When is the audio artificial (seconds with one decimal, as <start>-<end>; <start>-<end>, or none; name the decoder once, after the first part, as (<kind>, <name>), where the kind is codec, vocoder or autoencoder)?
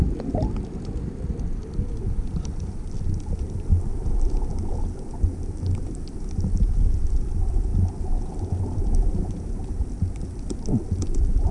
none